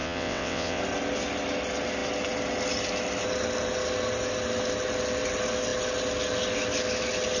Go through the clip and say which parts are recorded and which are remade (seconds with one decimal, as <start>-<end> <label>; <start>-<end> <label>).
0.0-0.8 remade; 0.8-7.4 recorded